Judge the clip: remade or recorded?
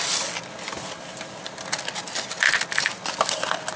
recorded